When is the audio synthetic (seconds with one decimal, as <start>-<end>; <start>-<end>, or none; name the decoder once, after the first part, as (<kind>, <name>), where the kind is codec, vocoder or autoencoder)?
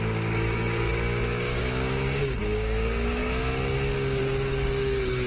0.0-1.6 (codec, DAC); 2.4-3.2; 4.2-5.3